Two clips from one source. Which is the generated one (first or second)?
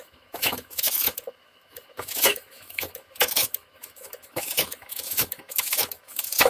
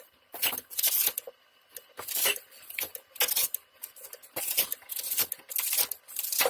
first